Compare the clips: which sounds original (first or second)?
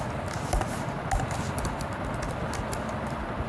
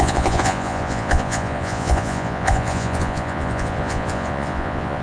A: first